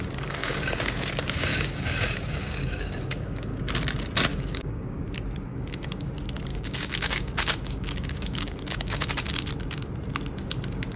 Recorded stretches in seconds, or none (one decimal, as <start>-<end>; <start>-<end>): 0.0-0.4; 3.6-4.3; 5.0-5.5; 6.1-6.5; 9.1-11.0

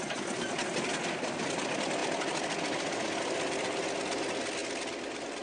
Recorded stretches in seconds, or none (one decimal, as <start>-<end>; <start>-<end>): 0.0-5.4